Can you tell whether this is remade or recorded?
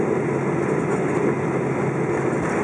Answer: recorded